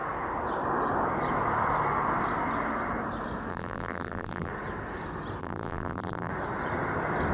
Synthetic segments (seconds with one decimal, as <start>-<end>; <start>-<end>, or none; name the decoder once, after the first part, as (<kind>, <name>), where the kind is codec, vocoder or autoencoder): 3.5-4.5 (vocoder, BigVGAN v2); 5.4-6.3